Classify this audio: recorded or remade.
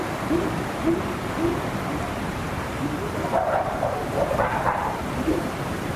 remade